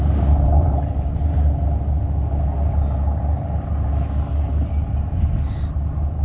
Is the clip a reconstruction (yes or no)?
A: no